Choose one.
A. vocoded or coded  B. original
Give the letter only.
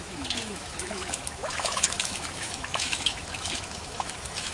A